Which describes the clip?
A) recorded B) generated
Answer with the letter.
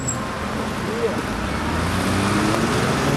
A